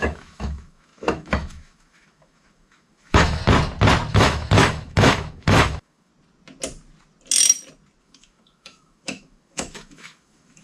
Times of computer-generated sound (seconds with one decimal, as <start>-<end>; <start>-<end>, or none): 0.0-3.4; 4.1-6.1; 8.0-10.6